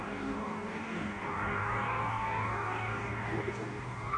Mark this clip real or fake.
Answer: fake